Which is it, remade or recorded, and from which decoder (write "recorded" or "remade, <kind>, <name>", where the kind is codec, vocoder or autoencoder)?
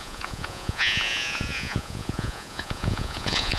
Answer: remade, vocoder, Vocos